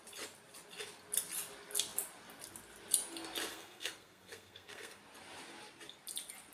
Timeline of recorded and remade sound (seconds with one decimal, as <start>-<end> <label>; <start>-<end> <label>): 0.0-3.5 recorded; 3.5-5.0 remade; 5.0-6.5 recorded